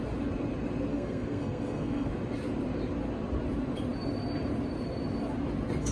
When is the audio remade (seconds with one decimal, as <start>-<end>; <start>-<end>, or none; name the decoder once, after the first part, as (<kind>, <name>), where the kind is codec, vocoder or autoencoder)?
0.9-2.1 (codec, SNAC)